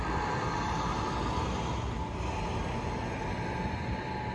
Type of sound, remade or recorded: recorded